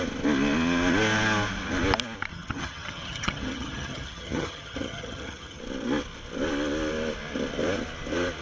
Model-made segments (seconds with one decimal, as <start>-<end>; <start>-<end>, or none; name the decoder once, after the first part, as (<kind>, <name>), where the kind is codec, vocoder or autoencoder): 2.3-5.6 (vocoder, HiFi-GAN)